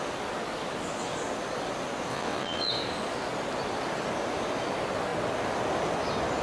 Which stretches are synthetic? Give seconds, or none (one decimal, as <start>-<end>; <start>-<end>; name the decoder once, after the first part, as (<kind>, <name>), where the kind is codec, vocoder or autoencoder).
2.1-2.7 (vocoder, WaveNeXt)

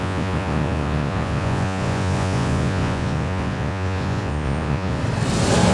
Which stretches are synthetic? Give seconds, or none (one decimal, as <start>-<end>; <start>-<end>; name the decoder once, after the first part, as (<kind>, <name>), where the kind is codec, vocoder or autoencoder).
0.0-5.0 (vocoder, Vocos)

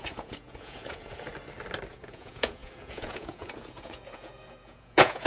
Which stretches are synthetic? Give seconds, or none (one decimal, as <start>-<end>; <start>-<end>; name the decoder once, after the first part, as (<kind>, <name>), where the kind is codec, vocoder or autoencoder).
0.0-1.3 (vocoder, Vocos); 1.9-5.3

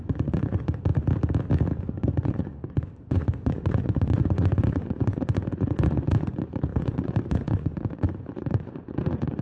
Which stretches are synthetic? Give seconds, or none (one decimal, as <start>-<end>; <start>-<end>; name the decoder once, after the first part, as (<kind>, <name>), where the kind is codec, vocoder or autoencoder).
0.0-0.9 (vocoder, Vocos); 1.8-9.4

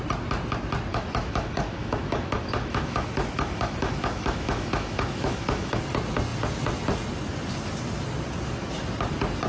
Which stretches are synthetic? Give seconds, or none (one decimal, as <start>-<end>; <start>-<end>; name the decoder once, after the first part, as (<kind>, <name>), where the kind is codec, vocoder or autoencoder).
0.9-5.8 (autoencoder, DAC-VAE)

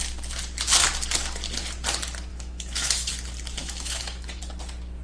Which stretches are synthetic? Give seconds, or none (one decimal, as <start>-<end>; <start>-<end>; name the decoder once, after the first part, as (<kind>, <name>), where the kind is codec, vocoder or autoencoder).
2.3-3.1 (autoencoder, DAC-VAE); 3.6-4.4